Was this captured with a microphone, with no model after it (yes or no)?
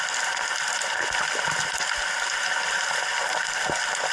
yes